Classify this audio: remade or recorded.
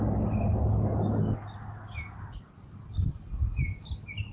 recorded